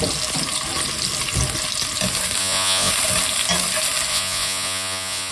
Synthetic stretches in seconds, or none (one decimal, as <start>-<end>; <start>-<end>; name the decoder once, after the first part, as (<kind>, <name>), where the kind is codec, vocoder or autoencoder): 2.4-2.9 (vocoder, Vocos); 4.1-5.3